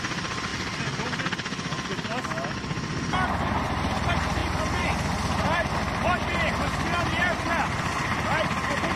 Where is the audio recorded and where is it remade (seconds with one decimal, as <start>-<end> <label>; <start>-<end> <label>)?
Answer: 0.0-0.5 remade; 0.5-3.5 recorded; 3.5-9.0 remade